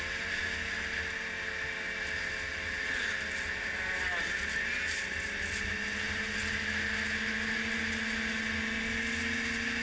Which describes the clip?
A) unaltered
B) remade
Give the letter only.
A